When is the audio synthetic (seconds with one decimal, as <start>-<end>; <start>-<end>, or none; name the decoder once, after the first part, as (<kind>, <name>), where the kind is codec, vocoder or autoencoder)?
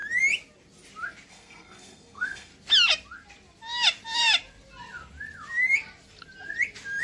1.3-2.5 (codec, SNAC)